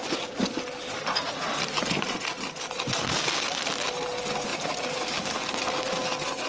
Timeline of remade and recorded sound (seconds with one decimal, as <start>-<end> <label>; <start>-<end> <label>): 0.0-6.5 recorded